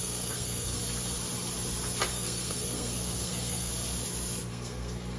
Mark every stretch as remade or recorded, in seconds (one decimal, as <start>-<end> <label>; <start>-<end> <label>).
0.0-0.8 remade; 0.8-2.1 recorded; 2.1-3.7 remade; 3.7-4.5 recorded; 4.5-5.2 remade